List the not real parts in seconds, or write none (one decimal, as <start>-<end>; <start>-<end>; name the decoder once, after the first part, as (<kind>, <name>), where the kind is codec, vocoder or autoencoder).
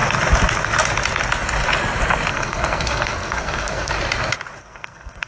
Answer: 2.3-3.9 (codec, SNAC); 4.6-5.3